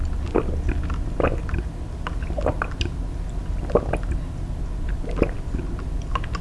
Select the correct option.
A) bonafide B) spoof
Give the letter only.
A